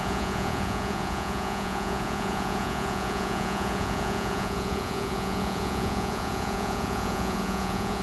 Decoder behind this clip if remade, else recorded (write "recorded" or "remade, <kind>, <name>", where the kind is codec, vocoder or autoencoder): remade, vocoder, Vocos